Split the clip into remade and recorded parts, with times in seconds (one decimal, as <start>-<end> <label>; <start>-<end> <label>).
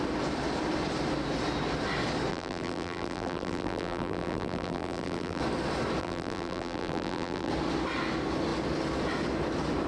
0.0-2.3 recorded; 2.3-5.4 remade; 5.4-6.0 recorded; 6.0-7.5 remade; 7.5-9.9 recorded